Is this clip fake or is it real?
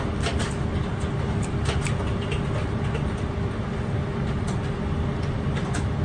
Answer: real